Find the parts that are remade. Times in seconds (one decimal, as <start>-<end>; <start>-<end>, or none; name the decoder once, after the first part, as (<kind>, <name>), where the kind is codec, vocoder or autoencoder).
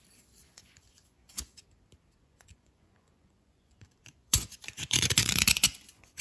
0.4-1.6 (vocoder, Vocos); 2.2-6.2